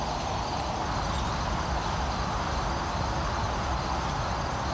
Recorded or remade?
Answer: recorded